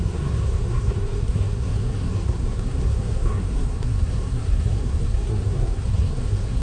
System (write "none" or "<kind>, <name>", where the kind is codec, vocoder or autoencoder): codec, SNAC